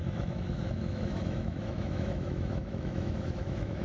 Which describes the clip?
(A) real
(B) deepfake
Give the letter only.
B